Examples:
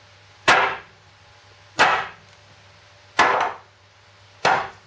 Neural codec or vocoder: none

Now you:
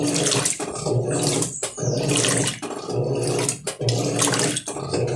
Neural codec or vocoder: none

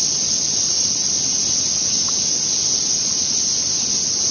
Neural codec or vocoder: none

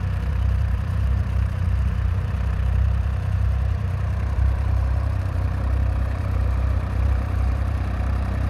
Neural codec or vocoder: vocoder, BigVGAN v2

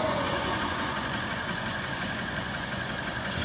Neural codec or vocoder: vocoder, Vocos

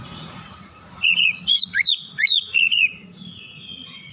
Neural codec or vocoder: vocoder, Vocos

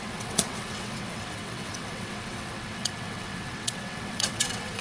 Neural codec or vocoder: vocoder, WaveNeXt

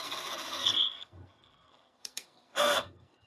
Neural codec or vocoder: codec, SNAC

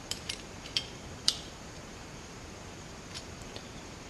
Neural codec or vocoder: vocoder, BigVGAN v2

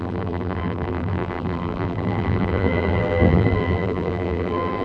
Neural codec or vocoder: vocoder, BigVGAN v2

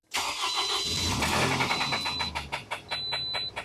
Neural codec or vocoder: none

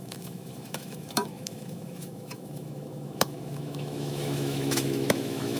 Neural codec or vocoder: autoencoder, DAC-VAE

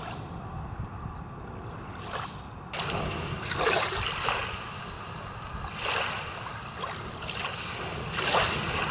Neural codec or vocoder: none